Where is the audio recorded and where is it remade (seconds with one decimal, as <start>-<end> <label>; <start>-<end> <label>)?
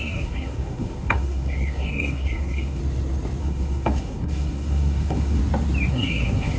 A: 0.0-2.8 remade; 2.8-3.4 recorded; 3.4-5.4 remade; 5.4-5.9 recorded; 5.9-6.6 remade